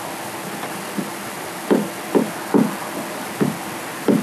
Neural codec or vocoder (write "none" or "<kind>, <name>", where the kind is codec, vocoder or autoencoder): none